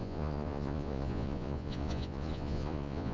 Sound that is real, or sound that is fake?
fake